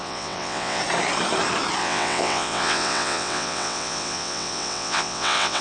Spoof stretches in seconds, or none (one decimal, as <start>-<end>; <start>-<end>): 0.0-0.8; 1.8-5.6